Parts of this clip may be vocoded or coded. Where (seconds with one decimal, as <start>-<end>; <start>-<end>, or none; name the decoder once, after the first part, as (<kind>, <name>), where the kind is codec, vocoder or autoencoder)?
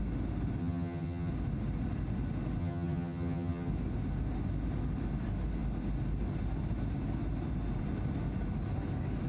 0.6-1.3 (vocoder, HiFi-GAN); 2.6-3.7